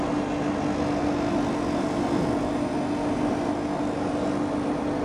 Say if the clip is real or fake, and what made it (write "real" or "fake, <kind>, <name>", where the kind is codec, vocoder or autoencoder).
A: real